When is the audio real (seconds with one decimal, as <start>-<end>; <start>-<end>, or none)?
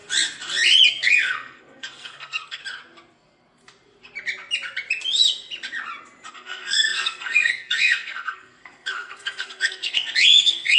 0.0-0.9; 2.6-6.3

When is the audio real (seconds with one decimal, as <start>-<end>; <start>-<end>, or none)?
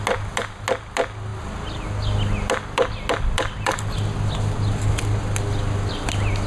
0.0-6.5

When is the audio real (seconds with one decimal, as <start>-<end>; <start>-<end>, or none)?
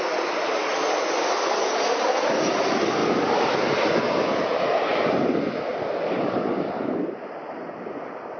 0.0-5.7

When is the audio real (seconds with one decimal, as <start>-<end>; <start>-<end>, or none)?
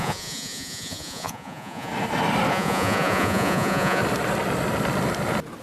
1.9-2.5; 4.0-5.6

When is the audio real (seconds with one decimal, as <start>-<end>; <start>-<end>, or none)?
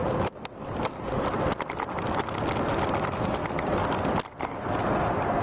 0.0-5.4